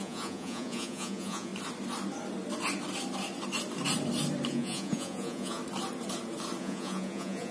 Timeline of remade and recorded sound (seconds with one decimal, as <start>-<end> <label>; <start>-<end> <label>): 0.0-1.5 remade; 1.5-4.5 recorded; 4.5-5.6 remade; 5.6-6.6 recorded; 6.6-7.5 remade